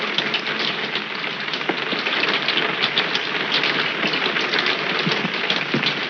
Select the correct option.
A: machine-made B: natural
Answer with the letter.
B